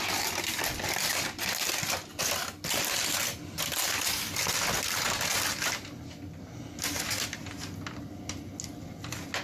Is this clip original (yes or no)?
yes